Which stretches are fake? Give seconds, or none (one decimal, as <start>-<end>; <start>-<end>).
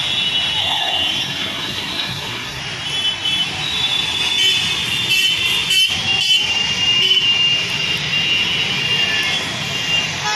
0.6-2.6